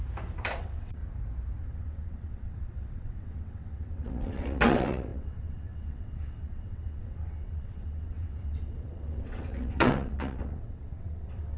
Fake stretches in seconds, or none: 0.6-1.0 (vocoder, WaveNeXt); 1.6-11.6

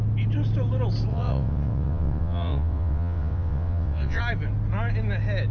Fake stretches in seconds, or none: 1.1-4.2 (vocoder, WaveNeXt)

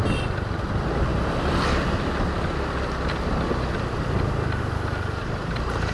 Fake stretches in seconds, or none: none

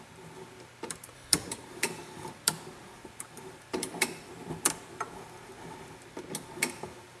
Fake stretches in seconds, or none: 1.1-5.4 (vocoder, BigVGAN v2)

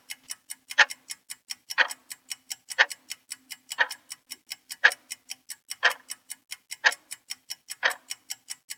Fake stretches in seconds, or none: none